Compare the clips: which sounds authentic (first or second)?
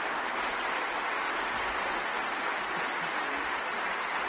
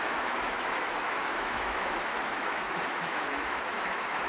first